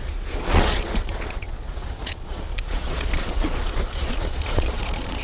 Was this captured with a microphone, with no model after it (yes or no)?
no